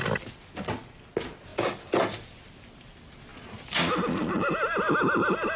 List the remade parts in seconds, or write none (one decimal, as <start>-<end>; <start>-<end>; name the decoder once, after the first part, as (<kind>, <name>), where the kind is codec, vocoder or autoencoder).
none